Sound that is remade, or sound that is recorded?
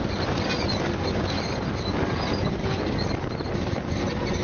recorded